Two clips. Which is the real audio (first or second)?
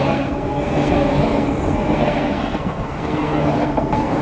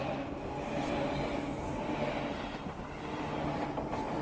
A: second